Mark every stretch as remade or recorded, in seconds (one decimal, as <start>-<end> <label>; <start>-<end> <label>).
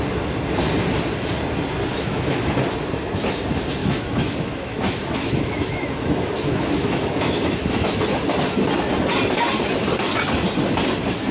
0.0-1.9 recorded; 1.9-2.5 remade; 2.5-3.8 recorded; 3.8-8.0 remade; 8.0-11.3 recorded